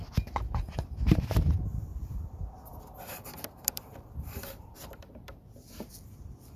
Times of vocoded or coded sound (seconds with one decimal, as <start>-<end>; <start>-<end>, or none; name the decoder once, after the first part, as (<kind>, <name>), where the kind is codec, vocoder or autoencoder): 1.9-5.9 (vocoder, BigVGAN v2)